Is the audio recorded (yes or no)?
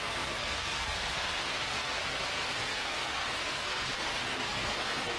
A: no